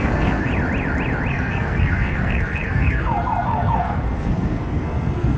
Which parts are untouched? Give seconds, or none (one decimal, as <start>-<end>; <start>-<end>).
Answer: 0.5-1.3